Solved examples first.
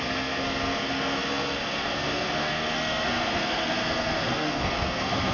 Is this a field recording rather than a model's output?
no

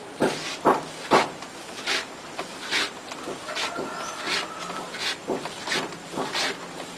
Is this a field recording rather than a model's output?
yes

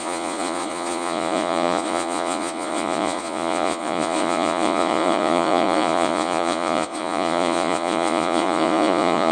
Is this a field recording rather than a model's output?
no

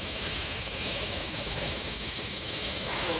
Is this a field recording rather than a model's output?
no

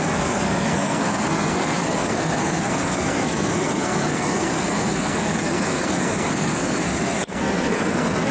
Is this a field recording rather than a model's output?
no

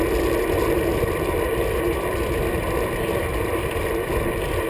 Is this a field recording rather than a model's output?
yes